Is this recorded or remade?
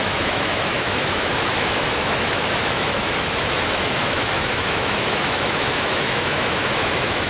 remade